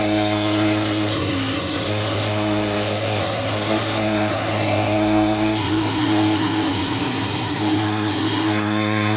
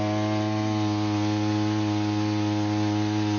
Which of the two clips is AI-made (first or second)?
first